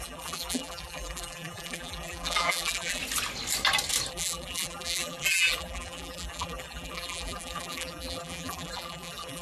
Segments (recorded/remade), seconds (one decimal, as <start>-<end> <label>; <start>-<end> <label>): 0.0-3.0 remade; 3.0-4.1 recorded; 4.1-9.4 remade